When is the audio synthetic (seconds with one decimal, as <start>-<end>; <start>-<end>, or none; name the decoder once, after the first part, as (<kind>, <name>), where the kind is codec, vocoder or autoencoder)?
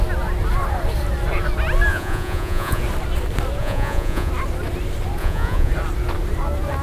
1.9-2.8 (vocoder, Vocos); 3.6-4.3; 5.2-5.7